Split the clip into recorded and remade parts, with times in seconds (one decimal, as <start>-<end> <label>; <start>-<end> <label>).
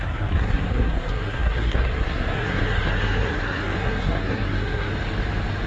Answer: 0.0-4.9 remade; 4.9-5.7 recorded